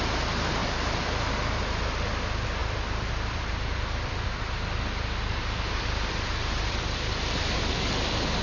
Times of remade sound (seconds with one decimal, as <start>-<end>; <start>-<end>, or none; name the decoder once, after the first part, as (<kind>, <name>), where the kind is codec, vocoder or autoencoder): 2.6-7.6 (vocoder, BigVGAN v2)